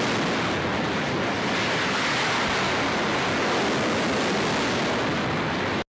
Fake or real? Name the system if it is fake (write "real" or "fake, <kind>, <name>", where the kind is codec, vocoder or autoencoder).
real